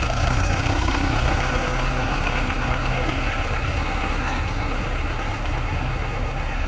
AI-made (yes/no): yes